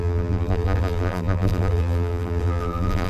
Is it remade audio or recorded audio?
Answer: remade